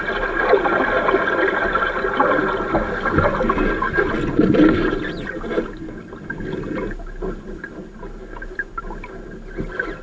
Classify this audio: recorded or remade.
recorded